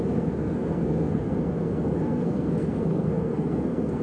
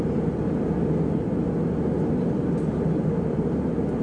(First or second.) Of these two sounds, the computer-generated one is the first